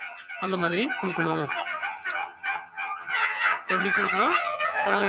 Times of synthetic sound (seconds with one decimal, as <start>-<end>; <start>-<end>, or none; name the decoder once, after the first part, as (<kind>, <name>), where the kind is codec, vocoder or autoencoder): 0.0-5.1 (vocoder, HiFi-GAN)